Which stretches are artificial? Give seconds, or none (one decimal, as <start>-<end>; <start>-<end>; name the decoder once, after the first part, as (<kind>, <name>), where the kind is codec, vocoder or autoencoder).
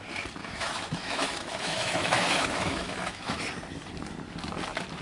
0.4-3.4 (autoencoder, DAC-VAE)